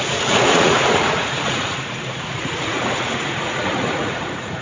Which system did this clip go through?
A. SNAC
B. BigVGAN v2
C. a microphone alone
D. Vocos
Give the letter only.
D